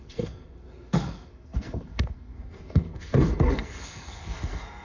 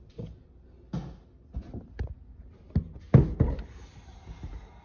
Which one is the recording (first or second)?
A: second